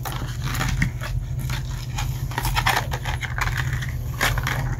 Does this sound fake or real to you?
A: real